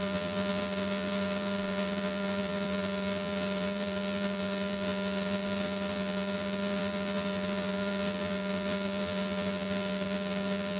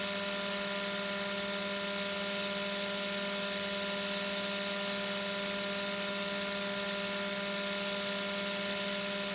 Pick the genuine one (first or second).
second